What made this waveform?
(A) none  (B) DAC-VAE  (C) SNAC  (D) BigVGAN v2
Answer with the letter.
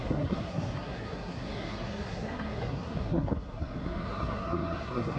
C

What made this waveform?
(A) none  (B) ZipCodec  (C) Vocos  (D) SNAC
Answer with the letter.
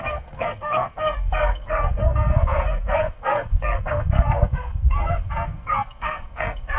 D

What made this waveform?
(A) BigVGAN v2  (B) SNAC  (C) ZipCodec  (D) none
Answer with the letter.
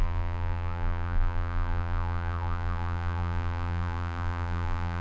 A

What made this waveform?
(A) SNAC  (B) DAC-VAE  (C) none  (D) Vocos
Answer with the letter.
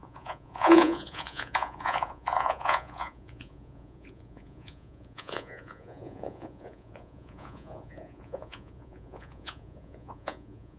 D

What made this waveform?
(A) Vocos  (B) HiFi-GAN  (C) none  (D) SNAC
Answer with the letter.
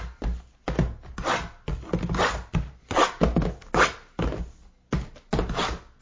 C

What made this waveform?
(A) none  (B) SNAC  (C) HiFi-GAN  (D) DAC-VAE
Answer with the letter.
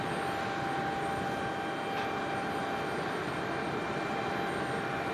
A